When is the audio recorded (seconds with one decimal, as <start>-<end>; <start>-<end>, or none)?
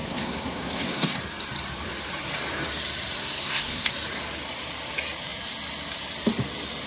1.2-3.2; 3.9-6.9